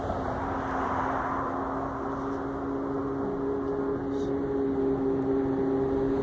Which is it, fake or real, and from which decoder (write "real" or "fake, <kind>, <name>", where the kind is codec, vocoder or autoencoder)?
real